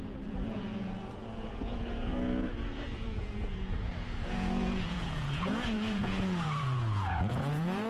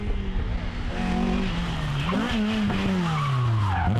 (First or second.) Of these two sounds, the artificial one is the first